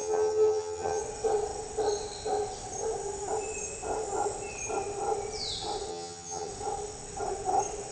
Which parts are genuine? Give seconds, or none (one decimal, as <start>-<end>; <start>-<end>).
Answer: 1.0-5.9; 6.5-7.9

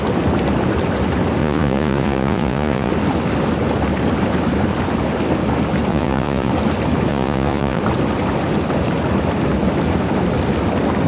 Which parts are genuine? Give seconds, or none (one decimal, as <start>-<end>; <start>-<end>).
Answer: 0.0-1.4; 2.9-5.9; 6.5-7.1; 7.8-11.1

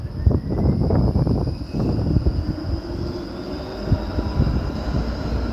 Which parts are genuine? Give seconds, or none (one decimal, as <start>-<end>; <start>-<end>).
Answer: 0.0-5.5

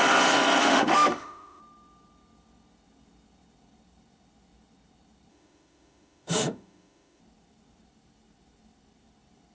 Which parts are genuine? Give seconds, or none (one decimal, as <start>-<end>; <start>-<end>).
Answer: 0.0-0.6; 1.6-5.3; 7.2-9.5

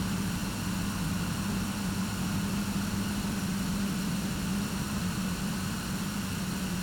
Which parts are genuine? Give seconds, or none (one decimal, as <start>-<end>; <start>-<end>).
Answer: 0.0-3.7; 4.9-6.8

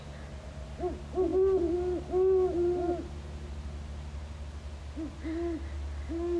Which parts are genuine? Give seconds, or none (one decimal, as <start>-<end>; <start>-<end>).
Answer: 0.0-6.4

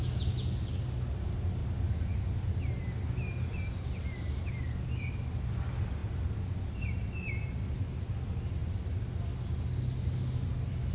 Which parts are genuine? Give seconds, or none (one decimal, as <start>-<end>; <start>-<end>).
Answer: 0.0-10.9

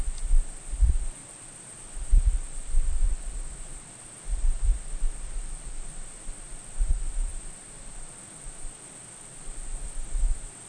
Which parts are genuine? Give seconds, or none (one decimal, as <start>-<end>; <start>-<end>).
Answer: 0.0-10.7